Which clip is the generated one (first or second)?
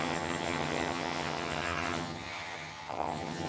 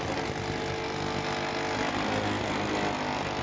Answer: first